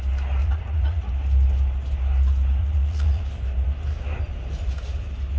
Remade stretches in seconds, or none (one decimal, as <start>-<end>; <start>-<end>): 0.4-1.1; 2.6-3.2